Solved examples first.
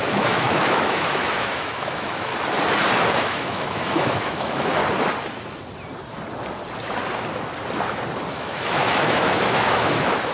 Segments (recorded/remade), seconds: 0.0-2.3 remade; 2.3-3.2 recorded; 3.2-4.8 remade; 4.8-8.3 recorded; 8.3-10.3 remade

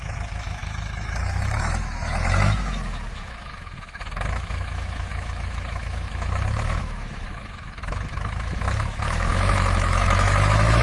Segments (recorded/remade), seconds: 0.0-10.8 remade

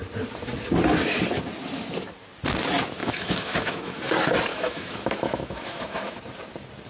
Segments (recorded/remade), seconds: 0.0-3.0 recorded; 3.0-4.0 remade; 4.0-4.5 recorded; 4.5-6.2 remade; 6.2-6.9 recorded